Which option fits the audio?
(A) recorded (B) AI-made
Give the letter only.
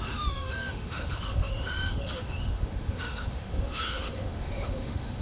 B